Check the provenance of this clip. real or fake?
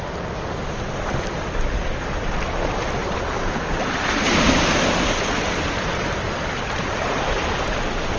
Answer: real